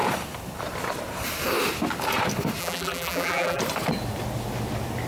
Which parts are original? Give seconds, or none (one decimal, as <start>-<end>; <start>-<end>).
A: 0.0-2.6; 3.6-5.1